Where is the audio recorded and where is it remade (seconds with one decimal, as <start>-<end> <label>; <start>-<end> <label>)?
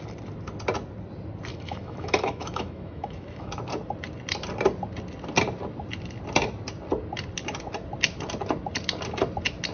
0.0-1.5 recorded; 1.5-3.5 remade; 3.5-9.7 recorded